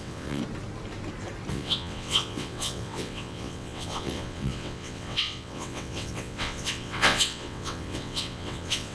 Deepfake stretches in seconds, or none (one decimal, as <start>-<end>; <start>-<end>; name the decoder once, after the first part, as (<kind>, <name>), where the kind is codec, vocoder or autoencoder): 0.0-0.4 (vocoder, WaveNeXt); 1.5-8.9